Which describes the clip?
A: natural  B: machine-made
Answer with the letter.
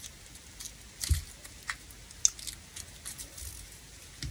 A